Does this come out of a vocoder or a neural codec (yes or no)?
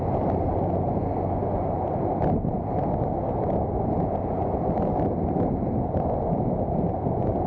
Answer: no